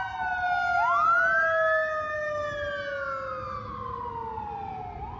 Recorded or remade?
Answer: recorded